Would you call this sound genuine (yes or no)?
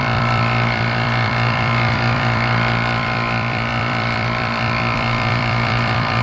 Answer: no